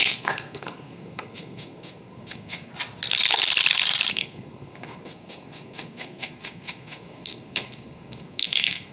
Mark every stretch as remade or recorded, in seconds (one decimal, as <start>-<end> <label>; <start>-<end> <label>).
0.0-2.7 remade; 2.7-4.1 recorded; 4.1-8.9 remade